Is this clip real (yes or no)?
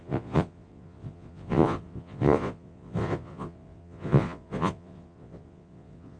no